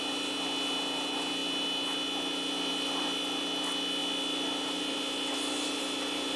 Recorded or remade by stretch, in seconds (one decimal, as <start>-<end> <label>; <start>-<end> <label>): 0.0-6.4 recorded